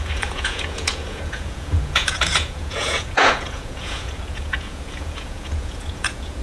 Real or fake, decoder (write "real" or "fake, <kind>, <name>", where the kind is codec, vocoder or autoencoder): fake, vocoder, Vocos